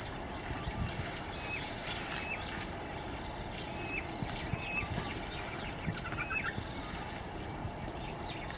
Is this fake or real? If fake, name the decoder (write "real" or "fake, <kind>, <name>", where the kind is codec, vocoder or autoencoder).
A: real